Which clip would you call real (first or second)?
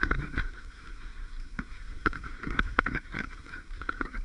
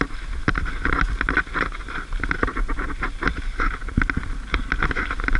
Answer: second